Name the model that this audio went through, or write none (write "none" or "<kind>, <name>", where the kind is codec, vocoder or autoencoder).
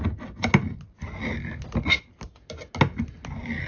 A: none